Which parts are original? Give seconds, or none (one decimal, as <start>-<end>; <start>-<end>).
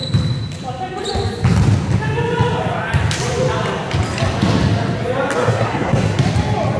0.0-5.4; 6.2-6.8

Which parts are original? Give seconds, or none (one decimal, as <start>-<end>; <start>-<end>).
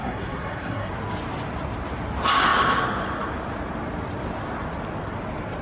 0.9-5.6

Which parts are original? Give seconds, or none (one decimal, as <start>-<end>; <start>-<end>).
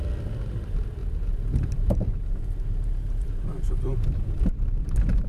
0.0-1.0; 4.2-5.3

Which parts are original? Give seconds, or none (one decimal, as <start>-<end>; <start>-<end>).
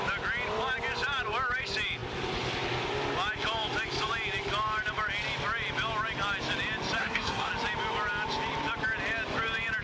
0.0-7.0; 7.5-9.8